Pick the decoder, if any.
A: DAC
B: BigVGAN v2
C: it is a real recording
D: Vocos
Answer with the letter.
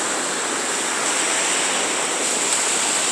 C